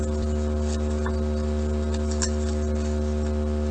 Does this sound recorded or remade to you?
recorded